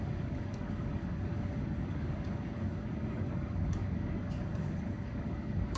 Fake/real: fake